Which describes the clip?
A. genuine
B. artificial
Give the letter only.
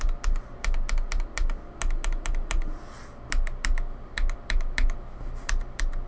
A